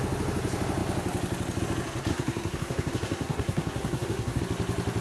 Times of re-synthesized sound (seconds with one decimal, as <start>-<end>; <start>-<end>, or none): 2.1-4.4